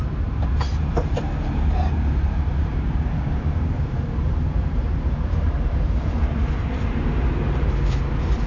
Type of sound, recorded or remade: remade